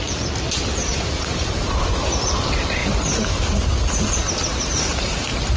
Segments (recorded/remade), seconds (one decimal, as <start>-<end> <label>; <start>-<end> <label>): 0.0-0.9 recorded; 0.9-2.4 remade; 2.4-2.8 recorded; 2.8-4.2 remade; 4.2-5.6 recorded

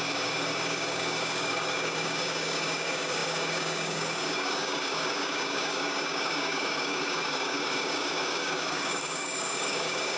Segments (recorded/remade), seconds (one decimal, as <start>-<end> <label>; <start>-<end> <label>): 0.0-10.2 remade